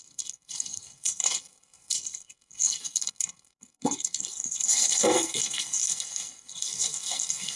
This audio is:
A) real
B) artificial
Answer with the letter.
B